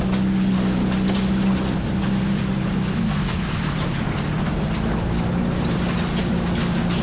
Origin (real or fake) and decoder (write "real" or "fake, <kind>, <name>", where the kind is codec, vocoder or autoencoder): real